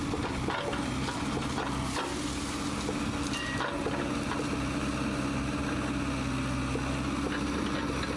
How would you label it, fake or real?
real